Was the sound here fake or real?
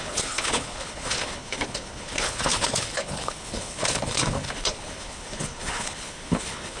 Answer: fake